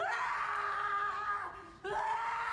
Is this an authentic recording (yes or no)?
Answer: yes